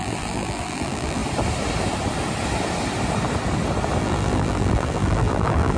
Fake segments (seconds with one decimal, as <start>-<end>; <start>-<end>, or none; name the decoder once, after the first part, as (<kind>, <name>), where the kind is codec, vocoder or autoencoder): 0.0-1.2 (vocoder, BigVGAN v2); 4.0-5.8